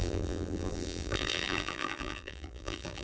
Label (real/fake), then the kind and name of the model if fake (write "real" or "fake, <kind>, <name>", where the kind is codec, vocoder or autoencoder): fake, vocoder, BigVGAN v2